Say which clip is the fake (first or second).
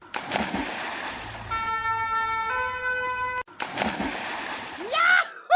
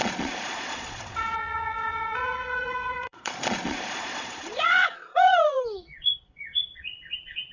second